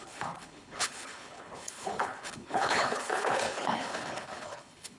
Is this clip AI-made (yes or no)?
yes